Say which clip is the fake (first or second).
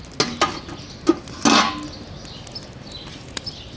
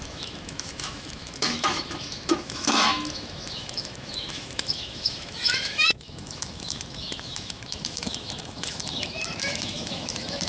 second